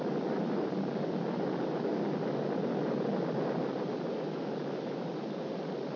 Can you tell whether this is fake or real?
real